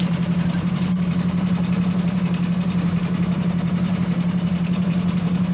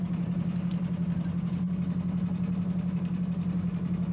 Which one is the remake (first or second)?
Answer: first